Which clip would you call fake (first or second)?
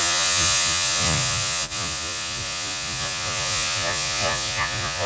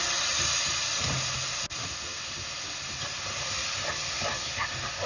first